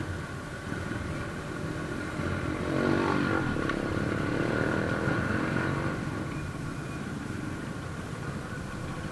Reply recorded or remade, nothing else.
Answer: recorded